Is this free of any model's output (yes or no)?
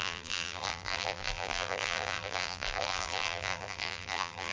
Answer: no